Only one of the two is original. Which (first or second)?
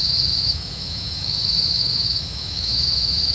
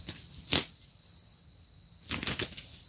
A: second